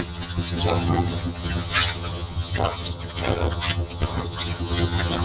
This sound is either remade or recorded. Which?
remade